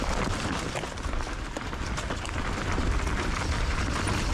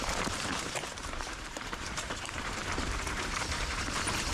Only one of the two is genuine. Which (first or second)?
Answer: first